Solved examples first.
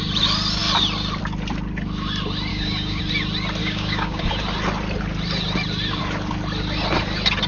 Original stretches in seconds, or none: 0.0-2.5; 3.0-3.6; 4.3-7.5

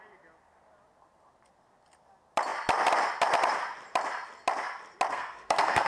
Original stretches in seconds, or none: 0.0-5.1

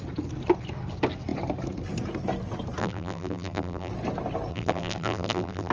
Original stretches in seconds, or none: 0.0-2.8; 3.9-4.5

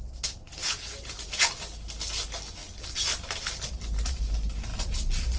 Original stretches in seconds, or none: 0.0-0.6; 1.5-5.4